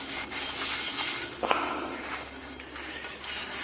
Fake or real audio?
real